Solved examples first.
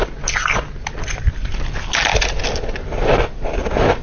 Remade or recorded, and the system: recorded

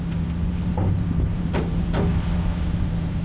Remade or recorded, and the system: recorded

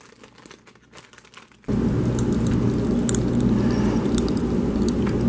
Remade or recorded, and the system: recorded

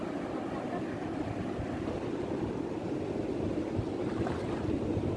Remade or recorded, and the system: recorded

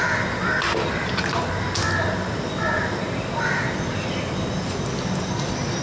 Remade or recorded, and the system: recorded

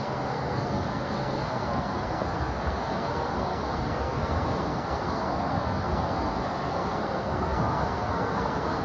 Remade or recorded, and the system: remade, codec, SNAC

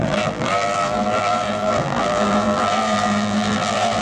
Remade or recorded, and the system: remade, vocoder, BigVGAN v2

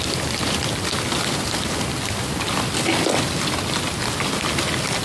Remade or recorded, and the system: remade, vocoder, BigVGAN v2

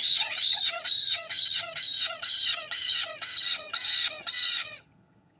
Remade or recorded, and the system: remade, vocoder, HiFi-GAN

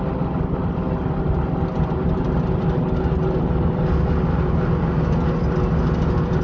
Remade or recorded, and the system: recorded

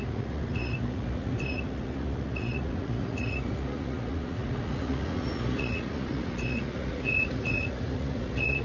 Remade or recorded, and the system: remade, vocoder, Vocos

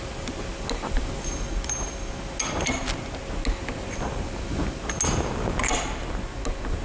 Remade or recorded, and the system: recorded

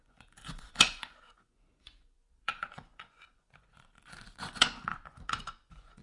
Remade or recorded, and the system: remade, vocoder, Vocos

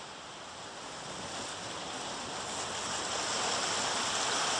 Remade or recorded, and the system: recorded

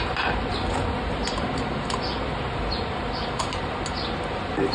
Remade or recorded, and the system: recorded